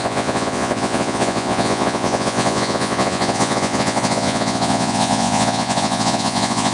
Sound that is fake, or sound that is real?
fake